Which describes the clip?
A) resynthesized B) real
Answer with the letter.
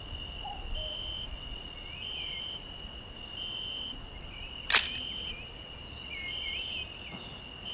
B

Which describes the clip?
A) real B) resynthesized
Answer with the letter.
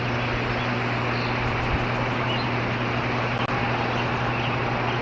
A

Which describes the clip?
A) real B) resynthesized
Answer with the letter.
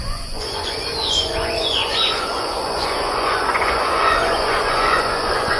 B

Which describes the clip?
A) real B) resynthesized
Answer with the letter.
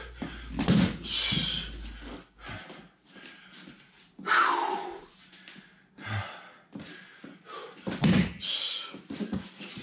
A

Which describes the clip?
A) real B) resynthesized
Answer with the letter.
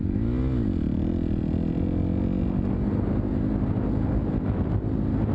A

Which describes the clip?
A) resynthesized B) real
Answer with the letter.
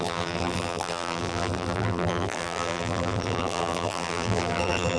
A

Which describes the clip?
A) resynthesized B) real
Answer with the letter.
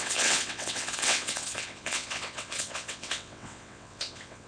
A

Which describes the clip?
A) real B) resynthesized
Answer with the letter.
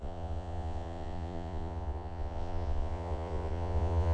B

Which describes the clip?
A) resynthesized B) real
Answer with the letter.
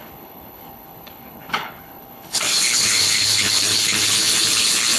A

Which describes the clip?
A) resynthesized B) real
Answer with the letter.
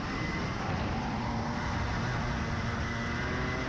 B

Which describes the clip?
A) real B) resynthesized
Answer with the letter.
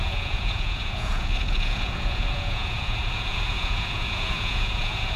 B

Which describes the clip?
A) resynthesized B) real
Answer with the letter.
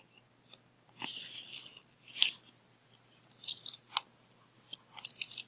B